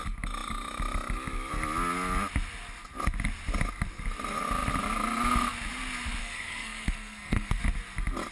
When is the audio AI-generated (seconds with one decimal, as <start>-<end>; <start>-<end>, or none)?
6.2-7.6